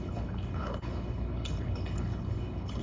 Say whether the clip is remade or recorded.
remade